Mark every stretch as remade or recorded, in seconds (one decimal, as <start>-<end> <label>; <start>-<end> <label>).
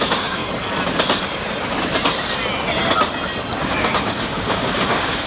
0.0-0.4 remade; 0.4-3.6 recorded; 3.6-5.3 remade